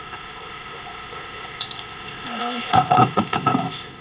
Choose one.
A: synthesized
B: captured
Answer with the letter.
A